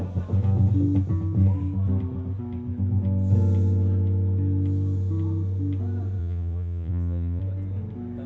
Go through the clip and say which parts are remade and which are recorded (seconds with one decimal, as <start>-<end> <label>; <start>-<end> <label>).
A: 0.0-6.2 recorded; 6.2-7.4 remade; 7.4-8.3 recorded